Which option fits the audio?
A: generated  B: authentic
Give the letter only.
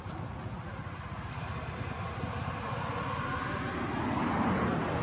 B